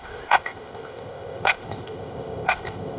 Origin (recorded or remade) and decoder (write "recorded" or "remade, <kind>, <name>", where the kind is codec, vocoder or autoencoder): remade, codec, ZipCodec